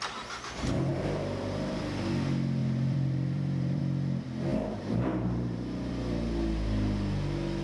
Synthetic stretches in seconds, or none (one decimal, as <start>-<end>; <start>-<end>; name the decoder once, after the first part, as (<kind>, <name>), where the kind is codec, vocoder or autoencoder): 0.9-1.8 (vocoder, BigVGAN v2); 2.6-3.8; 4.5-5.9

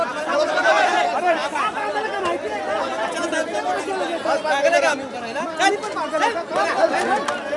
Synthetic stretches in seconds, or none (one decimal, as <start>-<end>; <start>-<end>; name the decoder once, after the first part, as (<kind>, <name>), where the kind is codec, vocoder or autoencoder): none

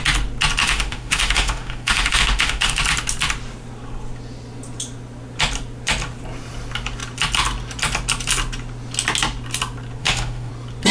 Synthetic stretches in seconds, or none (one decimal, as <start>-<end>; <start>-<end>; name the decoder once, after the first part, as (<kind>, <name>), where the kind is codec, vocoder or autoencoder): 0.6-2.8 (autoencoder, DAC-VAE); 10.0-10.5

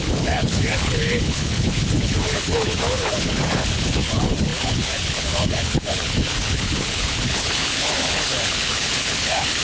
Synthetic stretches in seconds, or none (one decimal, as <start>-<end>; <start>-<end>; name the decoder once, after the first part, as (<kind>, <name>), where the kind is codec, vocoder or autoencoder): 0.0-9.6 (codec, HILCodec)